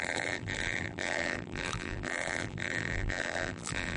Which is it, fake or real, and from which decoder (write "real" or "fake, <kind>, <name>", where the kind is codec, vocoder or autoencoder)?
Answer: fake, vocoder, BigVGAN v2